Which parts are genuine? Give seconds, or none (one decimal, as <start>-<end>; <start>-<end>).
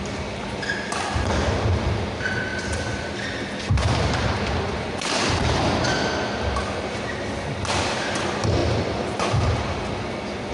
0.0-10.5